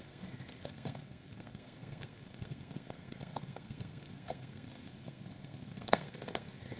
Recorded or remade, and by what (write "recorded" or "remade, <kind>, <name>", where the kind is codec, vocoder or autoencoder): remade, codec, SNAC